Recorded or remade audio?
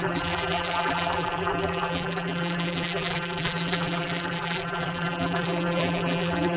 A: remade